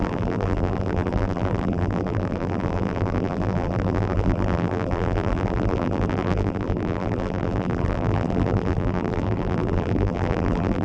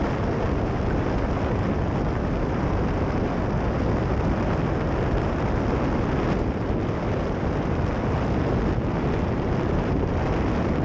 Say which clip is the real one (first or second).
second